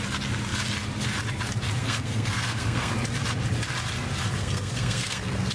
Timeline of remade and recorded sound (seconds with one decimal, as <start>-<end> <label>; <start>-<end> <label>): 0.0-1.8 recorded; 1.8-2.9 remade; 2.9-4.4 recorded; 4.4-5.5 remade